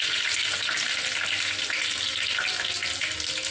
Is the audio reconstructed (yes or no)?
no